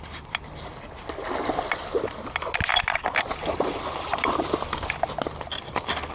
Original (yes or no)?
yes